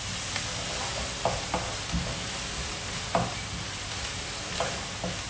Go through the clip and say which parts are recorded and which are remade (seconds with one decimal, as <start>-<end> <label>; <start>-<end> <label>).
0.0-5.3 recorded